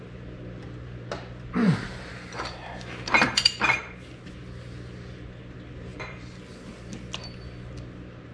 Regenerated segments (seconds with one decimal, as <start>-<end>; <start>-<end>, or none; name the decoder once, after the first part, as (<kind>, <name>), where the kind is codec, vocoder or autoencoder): 2.1-3.8 (vocoder, BigVGAN v2); 5.9-6.4